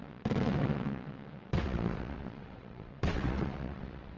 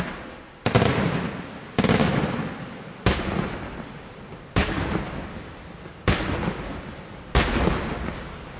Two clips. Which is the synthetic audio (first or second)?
first